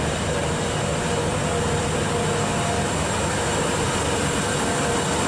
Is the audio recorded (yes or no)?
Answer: yes